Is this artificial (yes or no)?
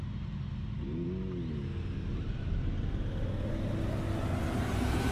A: no